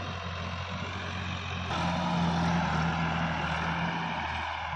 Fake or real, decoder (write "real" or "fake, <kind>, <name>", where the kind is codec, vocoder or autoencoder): real